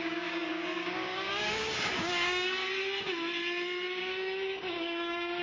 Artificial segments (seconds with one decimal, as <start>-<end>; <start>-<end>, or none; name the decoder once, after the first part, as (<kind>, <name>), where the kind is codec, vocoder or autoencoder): 0.0-2.6 (codec, DAC); 4.0-5.4

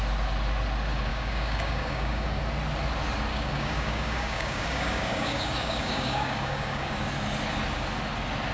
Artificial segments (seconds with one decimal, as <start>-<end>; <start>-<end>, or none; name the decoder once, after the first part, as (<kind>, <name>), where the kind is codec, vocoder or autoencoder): 1.1-2.4 (codec, DAC); 3.3-7.0

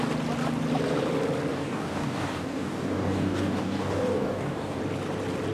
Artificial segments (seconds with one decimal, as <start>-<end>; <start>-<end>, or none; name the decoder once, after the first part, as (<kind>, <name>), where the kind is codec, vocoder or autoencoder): 1.5-4.8 (codec, DAC)

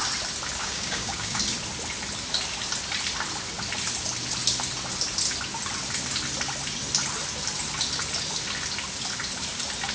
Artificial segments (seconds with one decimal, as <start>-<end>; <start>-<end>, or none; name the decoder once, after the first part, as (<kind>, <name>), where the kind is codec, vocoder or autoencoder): 0.6-1.4 (codec, DAC)

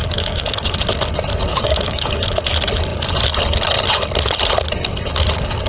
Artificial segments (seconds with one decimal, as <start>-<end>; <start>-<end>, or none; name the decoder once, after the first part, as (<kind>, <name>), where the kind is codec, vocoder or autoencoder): 0.0-0.8 (codec, DAC); 1.5-2.1